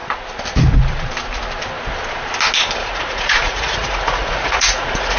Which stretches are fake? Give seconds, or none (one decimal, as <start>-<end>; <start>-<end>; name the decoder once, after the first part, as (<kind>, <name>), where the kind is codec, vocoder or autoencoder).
2.8-5.2 (vocoder, Vocos)